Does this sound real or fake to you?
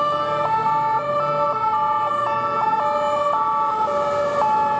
real